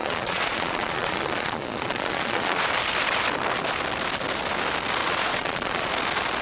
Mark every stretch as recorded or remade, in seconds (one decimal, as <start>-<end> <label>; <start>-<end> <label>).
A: 0.0-2.7 remade; 2.7-5.0 recorded; 5.0-5.9 remade; 5.9-6.4 recorded